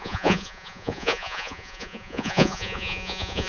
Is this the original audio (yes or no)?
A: no